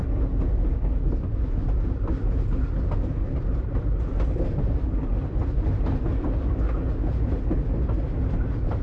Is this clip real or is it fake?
real